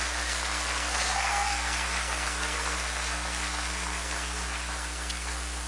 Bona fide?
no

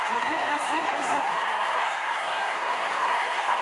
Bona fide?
no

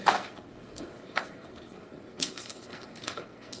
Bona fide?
no